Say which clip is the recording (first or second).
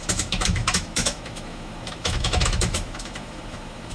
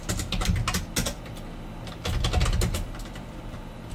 second